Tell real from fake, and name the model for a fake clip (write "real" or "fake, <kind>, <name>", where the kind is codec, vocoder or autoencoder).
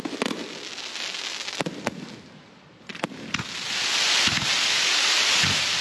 real